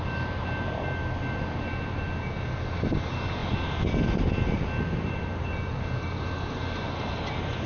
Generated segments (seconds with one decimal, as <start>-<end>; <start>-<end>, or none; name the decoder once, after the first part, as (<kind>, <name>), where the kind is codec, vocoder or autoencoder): none

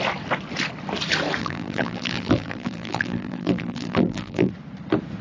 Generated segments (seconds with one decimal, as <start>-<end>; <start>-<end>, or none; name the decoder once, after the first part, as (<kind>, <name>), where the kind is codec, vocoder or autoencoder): 1.4-4.5 (vocoder, BigVGAN v2)

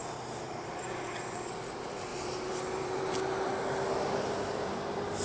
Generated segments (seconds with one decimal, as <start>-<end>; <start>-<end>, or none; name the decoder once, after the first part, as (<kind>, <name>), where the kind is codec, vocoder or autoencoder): 0.0-0.8 (vocoder, BigVGAN v2); 2.1-3.0

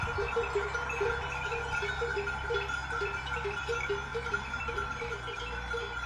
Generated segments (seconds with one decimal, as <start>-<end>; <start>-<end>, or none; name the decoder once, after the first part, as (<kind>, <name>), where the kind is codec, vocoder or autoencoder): 2.8-3.6 (vocoder, BigVGAN v2); 4.1-4.6

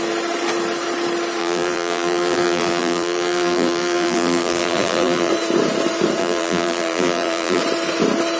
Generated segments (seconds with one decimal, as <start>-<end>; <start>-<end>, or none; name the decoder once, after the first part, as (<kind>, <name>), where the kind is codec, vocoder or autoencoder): 1.4-5.3 (vocoder, BigVGAN v2); 6.2-7.6